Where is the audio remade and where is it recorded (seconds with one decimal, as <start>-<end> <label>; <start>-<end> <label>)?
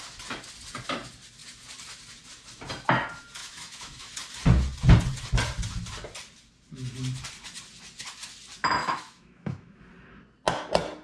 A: 0.0-3.4 recorded; 3.4-4.1 remade; 4.1-8.8 recorded; 8.8-9.8 remade; 9.8-11.0 recorded